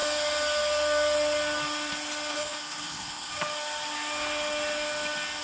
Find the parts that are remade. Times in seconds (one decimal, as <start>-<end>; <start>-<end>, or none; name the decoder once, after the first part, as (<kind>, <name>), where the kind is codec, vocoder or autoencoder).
2.3-3.3 (codec, HILCodec)